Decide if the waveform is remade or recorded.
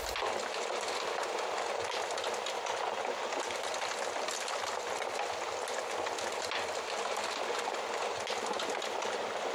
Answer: recorded